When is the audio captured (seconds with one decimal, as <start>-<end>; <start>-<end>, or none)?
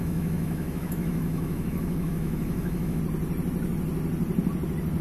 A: 3.0-5.0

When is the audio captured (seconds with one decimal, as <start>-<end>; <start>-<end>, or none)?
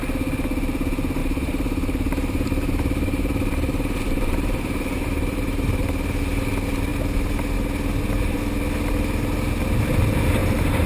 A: 0.0-1.2; 6.2-6.9; 8.4-10.4